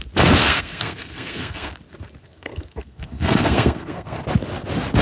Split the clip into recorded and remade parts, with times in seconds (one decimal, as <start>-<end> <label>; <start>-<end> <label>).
0.0-0.4 recorded; 0.4-1.7 remade; 1.7-2.2 recorded; 2.2-4.2 remade; 4.2-5.0 recorded